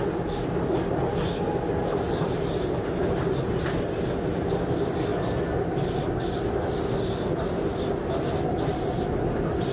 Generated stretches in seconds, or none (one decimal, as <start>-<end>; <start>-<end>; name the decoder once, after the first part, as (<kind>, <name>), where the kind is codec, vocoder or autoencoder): 1.8-3.0 (vocoder, BigVGAN v2)